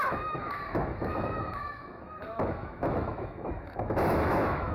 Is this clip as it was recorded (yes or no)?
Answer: no